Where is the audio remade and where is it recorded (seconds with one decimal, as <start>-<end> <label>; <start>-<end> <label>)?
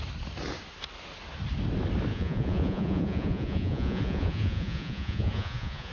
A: 0.0-2.1 recorded; 2.1-5.9 remade